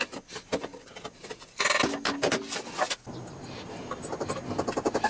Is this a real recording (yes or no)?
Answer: yes